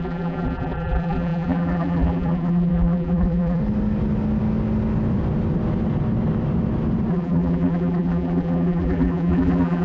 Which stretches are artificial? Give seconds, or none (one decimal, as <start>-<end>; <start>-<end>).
0.0-3.6; 7.1-9.8